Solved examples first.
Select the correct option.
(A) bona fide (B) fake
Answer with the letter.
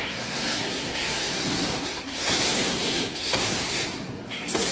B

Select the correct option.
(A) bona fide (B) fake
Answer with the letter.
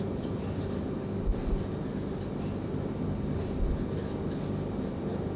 A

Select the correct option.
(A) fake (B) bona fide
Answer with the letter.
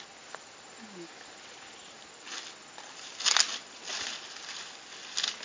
B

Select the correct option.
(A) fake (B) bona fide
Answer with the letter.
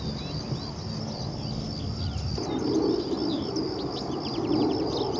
B